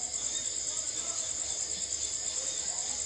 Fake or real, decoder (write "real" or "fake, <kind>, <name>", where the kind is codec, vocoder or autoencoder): real